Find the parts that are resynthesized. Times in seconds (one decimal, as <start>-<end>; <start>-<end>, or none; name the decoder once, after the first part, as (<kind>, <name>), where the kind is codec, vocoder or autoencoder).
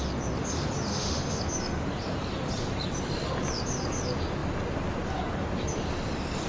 0.9-1.4 (autoencoder, DAC-VAE)